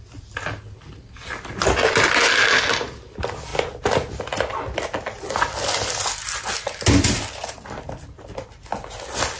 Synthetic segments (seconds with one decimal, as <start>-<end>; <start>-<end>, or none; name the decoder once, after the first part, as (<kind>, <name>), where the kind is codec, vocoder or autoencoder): none

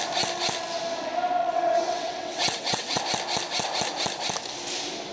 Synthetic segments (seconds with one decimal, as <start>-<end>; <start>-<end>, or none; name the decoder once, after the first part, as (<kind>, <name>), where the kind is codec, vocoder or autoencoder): 1.4-3.0 (vocoder, WaveNeXt)

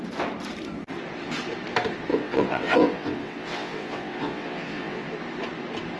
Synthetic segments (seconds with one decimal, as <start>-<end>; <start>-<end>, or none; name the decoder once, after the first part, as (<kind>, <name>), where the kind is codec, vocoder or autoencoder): 2.1-5.1 (vocoder, WaveNeXt)

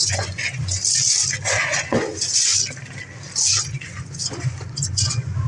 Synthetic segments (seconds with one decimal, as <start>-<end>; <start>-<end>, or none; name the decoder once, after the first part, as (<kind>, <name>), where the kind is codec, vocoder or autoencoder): 0.0-0.8 (vocoder, Vocos); 1.6-2.5; 3.6-5.5

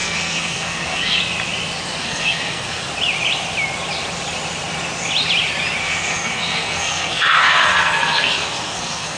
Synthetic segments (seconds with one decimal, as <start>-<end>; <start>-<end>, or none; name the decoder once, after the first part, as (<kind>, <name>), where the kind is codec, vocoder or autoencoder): 0.0-1.2 (codec, SNAC); 2.0-2.9; 5.8-9.2

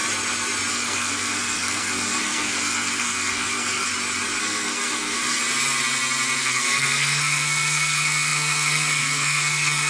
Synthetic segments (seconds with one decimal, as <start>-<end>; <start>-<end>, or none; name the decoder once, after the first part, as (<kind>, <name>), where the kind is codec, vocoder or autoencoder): 0.7-3.9 (codec, SNAC); 4.4-5.4; 6.4-9.9

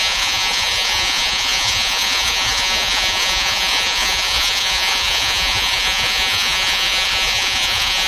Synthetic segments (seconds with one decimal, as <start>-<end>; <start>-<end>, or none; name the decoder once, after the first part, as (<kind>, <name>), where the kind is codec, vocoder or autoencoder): 0.0-8.1 (vocoder, Vocos)

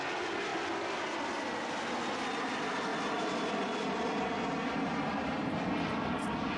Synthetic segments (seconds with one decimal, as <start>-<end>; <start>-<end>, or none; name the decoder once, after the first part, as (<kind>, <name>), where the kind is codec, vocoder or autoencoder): none